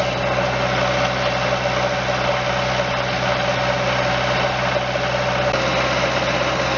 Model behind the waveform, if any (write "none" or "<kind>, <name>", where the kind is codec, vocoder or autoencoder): none